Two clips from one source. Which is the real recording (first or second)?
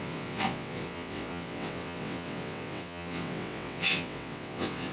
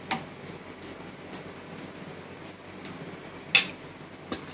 second